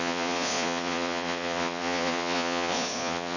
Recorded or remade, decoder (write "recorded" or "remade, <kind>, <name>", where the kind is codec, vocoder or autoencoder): remade, vocoder, Vocos